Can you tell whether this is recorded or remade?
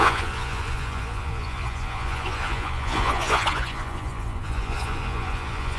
remade